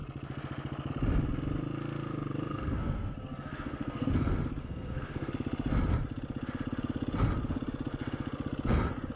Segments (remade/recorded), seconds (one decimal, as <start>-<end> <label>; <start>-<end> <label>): 0.0-2.5 recorded; 2.5-4.1 remade; 4.1-4.6 recorded; 4.6-5.3 remade; 5.3-9.2 recorded